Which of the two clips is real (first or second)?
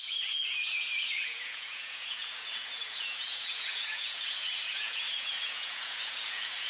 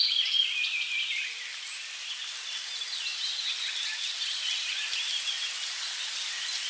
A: second